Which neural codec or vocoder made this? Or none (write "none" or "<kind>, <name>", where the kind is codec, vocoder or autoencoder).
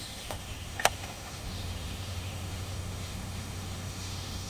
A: autoencoder, DAC-VAE